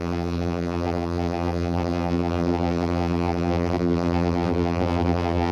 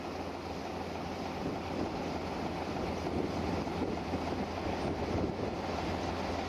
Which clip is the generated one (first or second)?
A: first